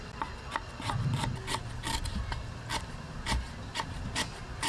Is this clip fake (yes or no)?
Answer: no